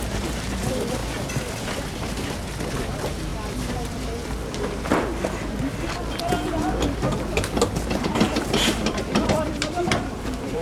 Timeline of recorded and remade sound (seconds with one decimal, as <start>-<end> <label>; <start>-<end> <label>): 0.0-1.0 remade; 1.0-2.7 recorded; 2.7-3.3 remade; 3.3-8.0 recorded; 8.0-10.6 remade

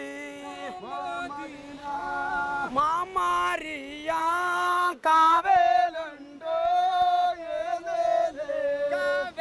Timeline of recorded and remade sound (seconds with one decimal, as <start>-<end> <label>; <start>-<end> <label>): 0.0-1.8 recorded; 1.8-2.3 remade; 2.3-4.2 recorded; 4.2-5.4 remade; 5.4-9.4 recorded

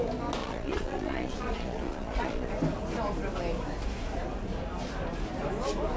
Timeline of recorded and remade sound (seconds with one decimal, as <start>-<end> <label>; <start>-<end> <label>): 0.0-0.4 recorded; 0.4-2.5 remade; 2.5-6.0 recorded

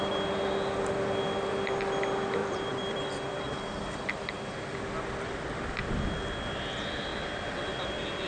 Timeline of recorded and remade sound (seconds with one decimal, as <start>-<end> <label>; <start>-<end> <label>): 0.0-2.4 recorded; 2.4-3.4 remade; 3.4-7.1 recorded; 7.1-8.3 remade

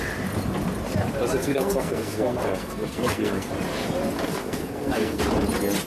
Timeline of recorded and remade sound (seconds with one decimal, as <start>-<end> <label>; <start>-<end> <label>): 0.0-1.4 recorded; 1.4-3.5 remade; 3.5-4.3 recorded; 4.3-5.2 remade; 5.2-5.9 recorded

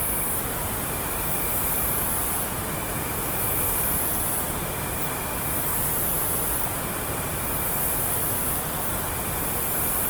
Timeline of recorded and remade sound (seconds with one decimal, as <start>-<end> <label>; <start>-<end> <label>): 0.0-2.7 recorded; 2.7-3.6 remade; 3.6-10.1 recorded

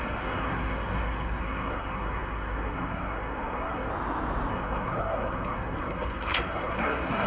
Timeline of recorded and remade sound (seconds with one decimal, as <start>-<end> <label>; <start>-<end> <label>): 0.0-3.9 remade; 3.9-4.5 recorded; 4.5-7.3 remade